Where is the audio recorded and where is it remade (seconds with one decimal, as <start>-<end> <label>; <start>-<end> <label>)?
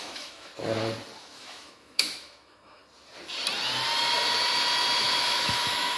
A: 0.0-0.5 remade; 0.5-1.2 recorded; 1.2-2.8 remade; 2.8-5.0 recorded; 5.0-6.0 remade